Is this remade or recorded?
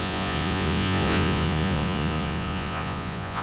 remade